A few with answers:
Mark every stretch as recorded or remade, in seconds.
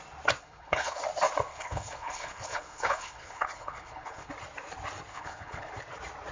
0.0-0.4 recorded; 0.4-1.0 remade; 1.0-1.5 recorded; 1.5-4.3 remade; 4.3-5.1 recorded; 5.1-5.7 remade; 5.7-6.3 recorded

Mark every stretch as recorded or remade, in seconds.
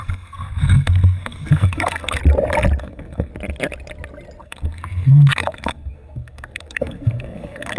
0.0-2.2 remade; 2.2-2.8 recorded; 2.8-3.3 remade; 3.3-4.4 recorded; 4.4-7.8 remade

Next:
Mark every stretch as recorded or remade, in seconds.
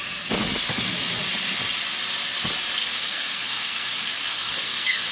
0.0-2.8 recorded; 2.8-5.1 remade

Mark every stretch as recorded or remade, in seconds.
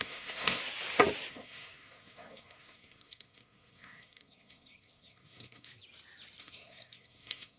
0.0-0.6 remade; 0.6-1.3 recorded; 1.3-5.7 remade; 5.7-6.4 recorded; 6.4-7.6 remade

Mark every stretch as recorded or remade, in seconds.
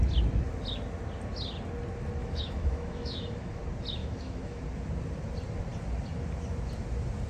0.0-2.2 recorded; 2.2-3.6 remade; 3.6-4.0 recorded; 4.0-4.6 remade; 4.6-7.3 recorded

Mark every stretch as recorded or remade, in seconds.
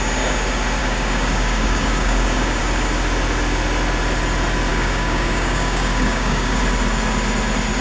0.0-0.8 recorded; 0.8-2.6 remade; 2.6-4.7 recorded; 4.7-6.6 remade; 6.6-7.8 recorded